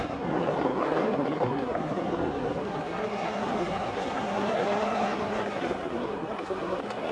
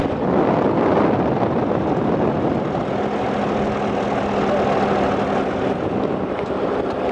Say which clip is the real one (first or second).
second